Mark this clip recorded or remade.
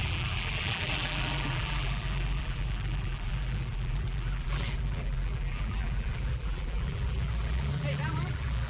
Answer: remade